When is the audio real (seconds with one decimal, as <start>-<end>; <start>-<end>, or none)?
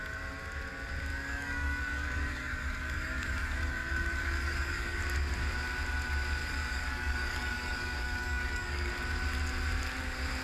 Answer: 0.0-1.1; 5.0-6.4; 8.9-10.4